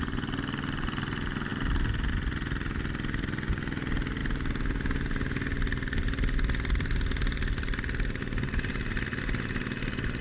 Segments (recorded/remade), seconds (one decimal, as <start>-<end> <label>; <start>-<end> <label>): 0.0-10.2 recorded